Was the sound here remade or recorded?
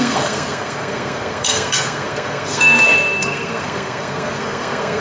remade